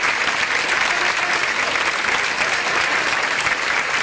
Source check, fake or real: real